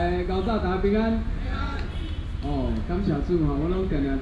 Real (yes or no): yes